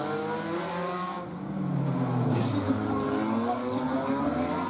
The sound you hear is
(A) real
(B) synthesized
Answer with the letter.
A